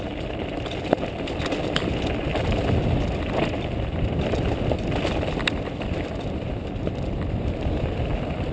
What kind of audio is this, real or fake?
real